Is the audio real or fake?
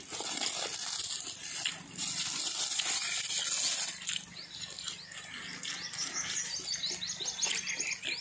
real